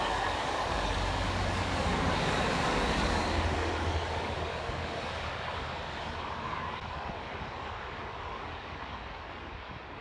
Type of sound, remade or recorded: remade